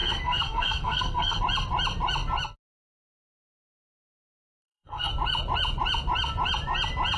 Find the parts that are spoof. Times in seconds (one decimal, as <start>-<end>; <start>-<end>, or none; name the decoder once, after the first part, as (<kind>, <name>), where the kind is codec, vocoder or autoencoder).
0.0-1.4 (codec, SNAC); 4.0-5.1